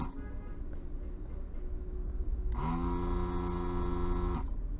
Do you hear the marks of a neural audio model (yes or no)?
no